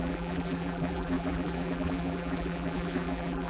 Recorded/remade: remade